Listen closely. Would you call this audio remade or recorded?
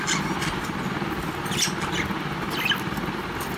recorded